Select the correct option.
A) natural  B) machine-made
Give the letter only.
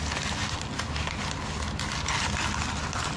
A